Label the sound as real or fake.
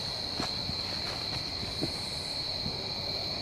real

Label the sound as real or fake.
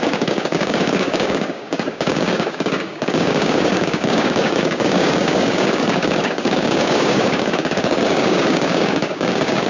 fake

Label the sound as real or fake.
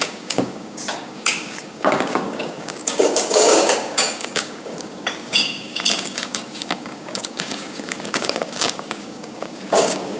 fake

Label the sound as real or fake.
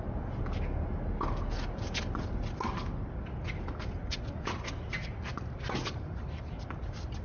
real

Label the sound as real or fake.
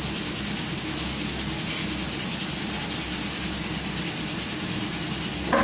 real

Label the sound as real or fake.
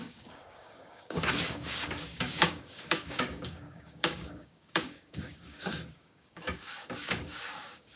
fake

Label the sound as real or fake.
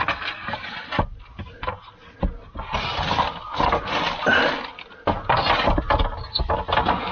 real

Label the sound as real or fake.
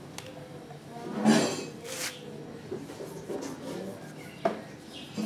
real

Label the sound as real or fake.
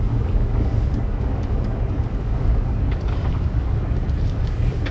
fake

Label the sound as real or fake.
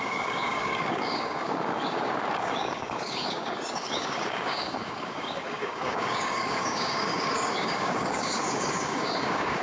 fake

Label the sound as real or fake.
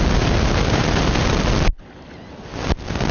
real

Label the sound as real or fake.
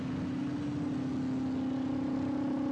real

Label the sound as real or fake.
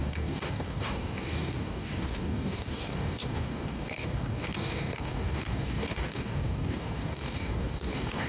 fake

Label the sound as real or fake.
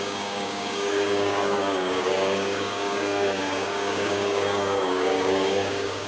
fake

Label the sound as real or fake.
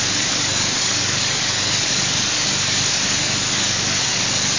fake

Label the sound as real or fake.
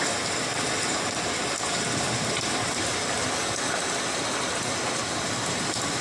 real